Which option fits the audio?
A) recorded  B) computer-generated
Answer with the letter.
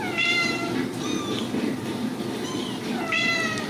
A